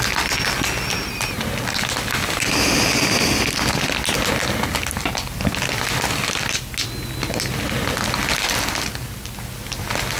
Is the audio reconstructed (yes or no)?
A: no